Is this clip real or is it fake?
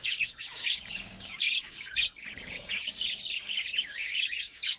fake